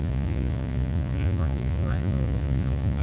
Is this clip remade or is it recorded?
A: remade